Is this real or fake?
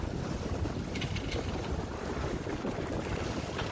real